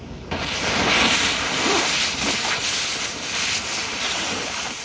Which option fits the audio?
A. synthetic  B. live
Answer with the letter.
B